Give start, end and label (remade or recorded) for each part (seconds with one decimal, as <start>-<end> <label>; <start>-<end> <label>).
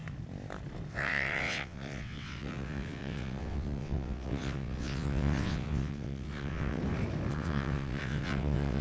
0.0-0.9 recorded; 0.9-6.8 remade; 6.8-7.3 recorded; 7.3-8.8 remade